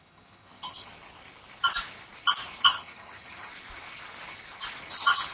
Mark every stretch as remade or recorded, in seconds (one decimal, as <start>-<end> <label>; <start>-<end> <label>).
0.0-0.9 remade; 0.9-2.6 recorded; 2.6-3.5 remade; 3.5-4.8 recorded; 4.8-5.3 remade